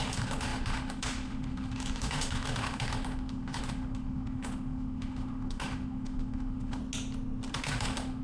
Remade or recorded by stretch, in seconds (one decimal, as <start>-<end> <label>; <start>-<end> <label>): 0.0-6.8 remade; 6.8-7.5 recorded; 7.5-8.2 remade